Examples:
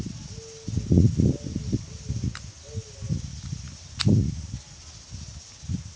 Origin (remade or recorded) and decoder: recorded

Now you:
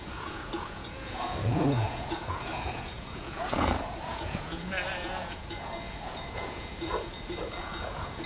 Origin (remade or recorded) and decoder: remade, vocoder, Vocos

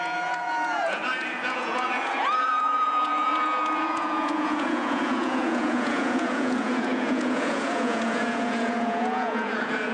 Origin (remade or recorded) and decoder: remade, vocoder, Vocos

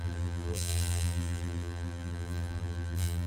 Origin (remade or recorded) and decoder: remade, vocoder, BigVGAN v2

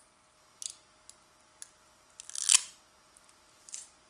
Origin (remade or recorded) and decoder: recorded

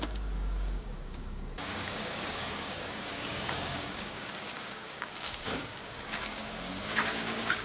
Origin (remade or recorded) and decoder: remade, codec, DAC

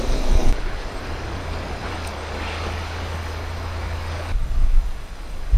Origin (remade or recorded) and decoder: remade, codec, DAC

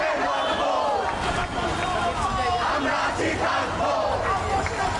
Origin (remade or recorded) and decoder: recorded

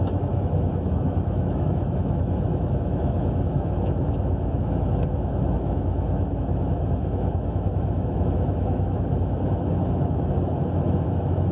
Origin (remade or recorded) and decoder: remade, autoencoder, DAC-VAE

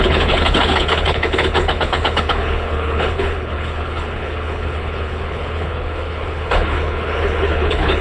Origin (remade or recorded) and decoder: remade, codec, HILCodec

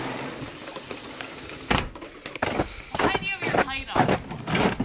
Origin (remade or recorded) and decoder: recorded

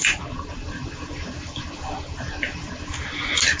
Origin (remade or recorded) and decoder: recorded